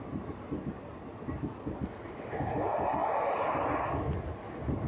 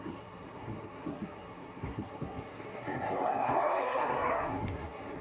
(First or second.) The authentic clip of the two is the first